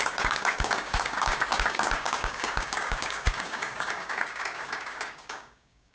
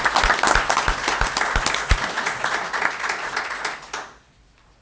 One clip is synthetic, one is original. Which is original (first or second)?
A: second